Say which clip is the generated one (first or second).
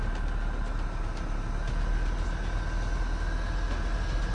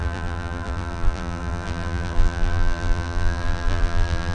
second